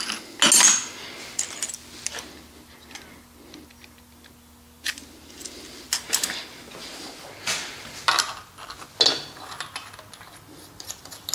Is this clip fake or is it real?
real